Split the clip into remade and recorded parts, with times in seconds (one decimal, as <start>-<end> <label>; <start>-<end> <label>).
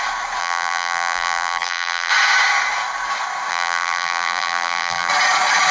0.0-0.4 recorded; 0.4-2.1 remade; 2.1-3.5 recorded; 3.5-5.1 remade; 5.1-5.7 recorded